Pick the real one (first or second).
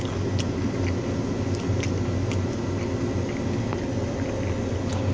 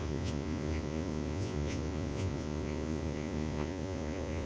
first